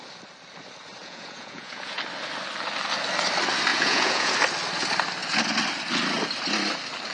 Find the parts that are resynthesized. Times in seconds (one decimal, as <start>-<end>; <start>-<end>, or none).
1.0-2.0; 3.7-4.3